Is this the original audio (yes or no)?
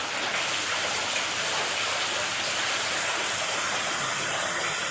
yes